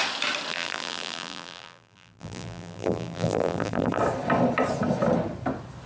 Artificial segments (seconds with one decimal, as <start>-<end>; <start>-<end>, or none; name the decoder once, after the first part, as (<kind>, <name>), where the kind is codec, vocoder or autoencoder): 0.5-4.0 (vocoder, BigVGAN v2)